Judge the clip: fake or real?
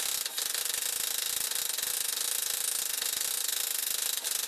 real